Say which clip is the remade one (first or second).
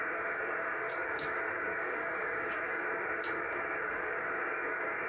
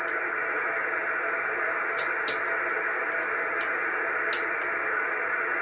first